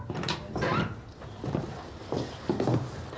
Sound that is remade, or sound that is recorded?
recorded